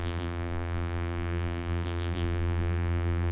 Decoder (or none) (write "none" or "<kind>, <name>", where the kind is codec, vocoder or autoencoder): vocoder, BigVGAN v2